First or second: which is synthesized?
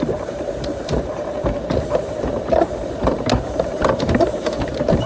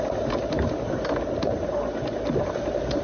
first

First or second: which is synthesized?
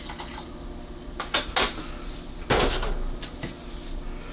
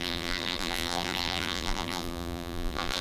second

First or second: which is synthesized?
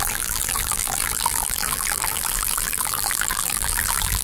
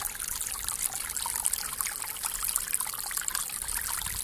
first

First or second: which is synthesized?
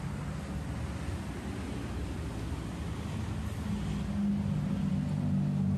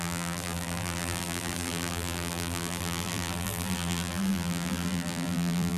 second